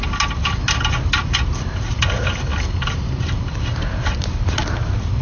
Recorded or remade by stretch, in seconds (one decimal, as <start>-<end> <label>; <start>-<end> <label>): 0.0-5.2 recorded